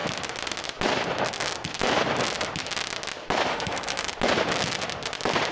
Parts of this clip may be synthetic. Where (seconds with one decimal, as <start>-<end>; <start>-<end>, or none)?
3.5-4.1